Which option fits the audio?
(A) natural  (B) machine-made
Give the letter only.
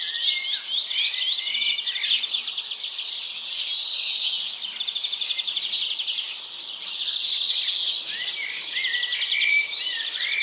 A